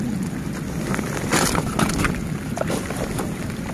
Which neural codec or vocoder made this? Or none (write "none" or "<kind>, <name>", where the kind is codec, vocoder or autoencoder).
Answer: none